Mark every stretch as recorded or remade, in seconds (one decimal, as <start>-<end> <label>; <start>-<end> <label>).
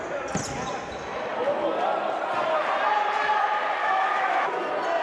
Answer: 0.0-3.8 recorded; 3.8-4.6 remade; 4.6-5.0 recorded